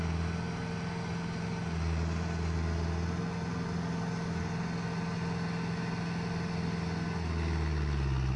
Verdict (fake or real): real